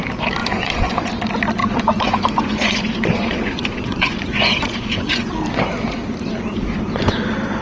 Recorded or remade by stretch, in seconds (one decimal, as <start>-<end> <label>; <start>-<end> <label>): 0.0-0.4 recorded; 0.4-1.1 remade; 1.1-1.6 recorded; 1.6-5.3 remade; 5.3-7.6 recorded